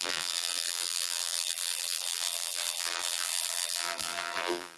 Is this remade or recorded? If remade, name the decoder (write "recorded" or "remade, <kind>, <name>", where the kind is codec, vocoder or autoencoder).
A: remade, vocoder, BigVGAN v2